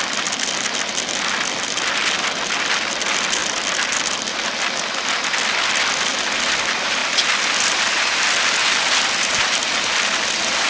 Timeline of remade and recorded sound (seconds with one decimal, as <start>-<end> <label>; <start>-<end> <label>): 0.0-10.7 recorded